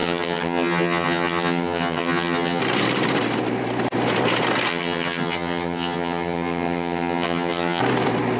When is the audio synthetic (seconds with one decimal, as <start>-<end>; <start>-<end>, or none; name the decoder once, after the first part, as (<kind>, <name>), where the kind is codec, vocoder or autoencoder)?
0.0-2.6 (vocoder, HiFi-GAN); 4.7-7.8